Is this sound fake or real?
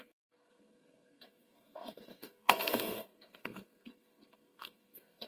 fake